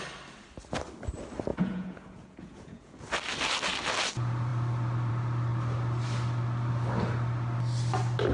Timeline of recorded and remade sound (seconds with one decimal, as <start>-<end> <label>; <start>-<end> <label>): 0.0-1.5 recorded; 1.5-3.0 remade; 3.0-8.3 recorded